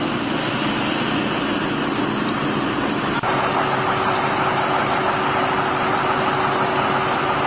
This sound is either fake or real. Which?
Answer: real